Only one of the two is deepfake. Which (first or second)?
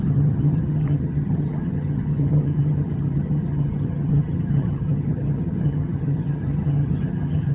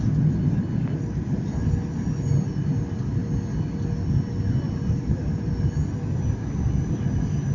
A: first